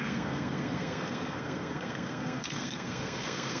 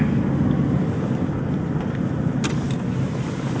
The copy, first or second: first